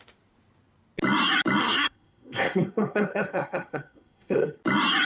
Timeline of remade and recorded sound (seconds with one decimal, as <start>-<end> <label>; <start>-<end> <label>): 0.0-1.6 recorded; 1.6-4.6 remade; 4.6-5.0 recorded

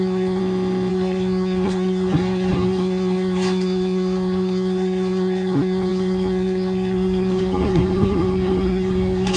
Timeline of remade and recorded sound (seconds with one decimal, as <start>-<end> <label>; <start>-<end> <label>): 0.0-0.4 remade; 0.4-0.9 recorded; 0.9-9.4 remade

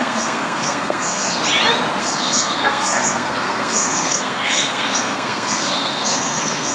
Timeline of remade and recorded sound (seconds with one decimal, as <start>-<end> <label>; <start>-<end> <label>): 0.0-1.4 remade; 1.4-2.0 recorded; 2.0-6.7 remade

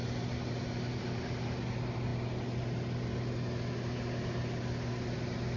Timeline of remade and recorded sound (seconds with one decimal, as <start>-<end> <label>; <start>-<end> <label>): 0.0-5.6 recorded

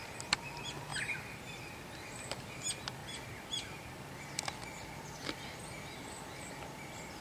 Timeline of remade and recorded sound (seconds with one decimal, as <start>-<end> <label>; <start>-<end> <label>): 0.0-7.2 recorded

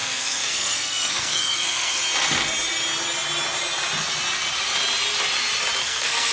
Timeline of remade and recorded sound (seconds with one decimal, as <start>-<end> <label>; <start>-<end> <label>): 0.0-2.0 remade; 2.0-5.8 recorded; 5.8-6.3 remade

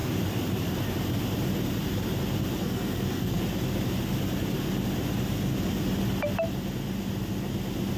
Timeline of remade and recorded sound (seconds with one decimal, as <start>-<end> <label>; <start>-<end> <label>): 0.0-2.6 recorded; 2.6-3.4 remade; 3.4-8.0 recorded